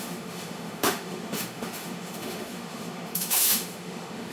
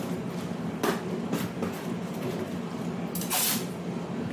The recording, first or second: second